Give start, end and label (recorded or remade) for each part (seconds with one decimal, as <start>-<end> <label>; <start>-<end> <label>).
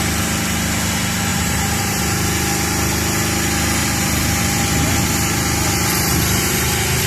0.0-1.3 recorded; 1.3-2.0 remade; 2.0-3.8 recorded; 3.8-4.4 remade; 4.4-7.1 recorded